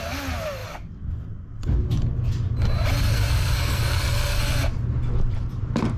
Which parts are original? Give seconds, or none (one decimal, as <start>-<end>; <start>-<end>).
0.0-3.1; 4.4-6.0